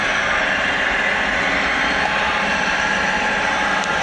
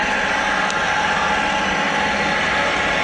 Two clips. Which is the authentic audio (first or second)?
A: second